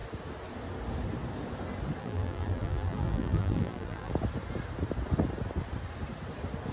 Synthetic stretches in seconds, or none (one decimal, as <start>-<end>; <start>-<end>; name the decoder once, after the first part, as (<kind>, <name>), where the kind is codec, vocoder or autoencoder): 2.0-4.1 (vocoder, BigVGAN v2)

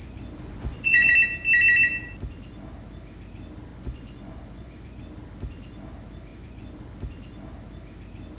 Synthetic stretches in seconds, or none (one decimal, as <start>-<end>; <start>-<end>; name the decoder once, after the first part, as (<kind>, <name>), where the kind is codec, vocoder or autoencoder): 0.0-1.1 (vocoder, Vocos); 3.7-5.0; 6.3-6.9

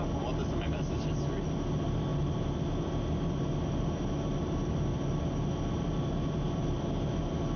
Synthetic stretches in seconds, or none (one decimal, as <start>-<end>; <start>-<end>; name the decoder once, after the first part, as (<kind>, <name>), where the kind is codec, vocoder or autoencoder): none

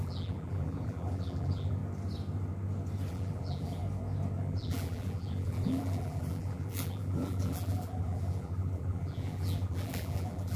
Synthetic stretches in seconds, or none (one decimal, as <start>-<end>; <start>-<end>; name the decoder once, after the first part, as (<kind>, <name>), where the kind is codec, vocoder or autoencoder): 0.0-1.8 (vocoder, BigVGAN v2); 3.1-3.8; 4.4-10.6

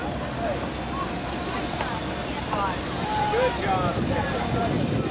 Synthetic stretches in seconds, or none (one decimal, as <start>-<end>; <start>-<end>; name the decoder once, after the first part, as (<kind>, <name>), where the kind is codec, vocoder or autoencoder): none

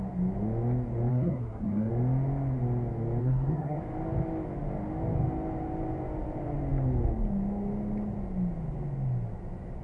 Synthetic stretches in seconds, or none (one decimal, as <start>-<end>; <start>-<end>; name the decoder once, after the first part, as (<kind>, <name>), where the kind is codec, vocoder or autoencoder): 1.1-1.9 (codec, SNAC); 3.2-3.8

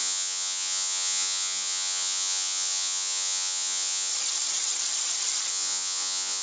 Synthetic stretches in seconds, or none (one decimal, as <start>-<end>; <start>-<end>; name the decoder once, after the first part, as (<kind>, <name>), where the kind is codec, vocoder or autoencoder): 0.0-4.1 (vocoder, Vocos); 5.5-6.4